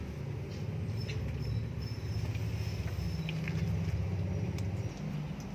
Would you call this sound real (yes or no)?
yes